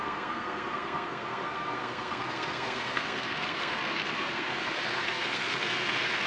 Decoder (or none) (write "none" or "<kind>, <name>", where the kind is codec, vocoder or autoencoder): codec, SNAC